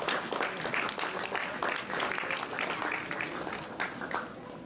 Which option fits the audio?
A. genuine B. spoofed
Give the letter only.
A